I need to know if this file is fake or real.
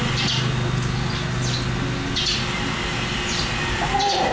real